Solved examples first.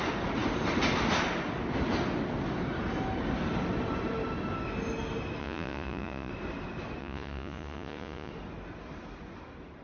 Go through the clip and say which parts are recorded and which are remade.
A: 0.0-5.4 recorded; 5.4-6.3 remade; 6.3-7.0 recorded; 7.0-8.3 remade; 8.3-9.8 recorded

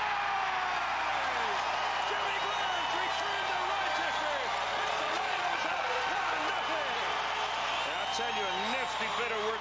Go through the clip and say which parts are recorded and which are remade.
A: 0.0-4.7 recorded; 4.7-6.2 remade; 6.2-9.6 recorded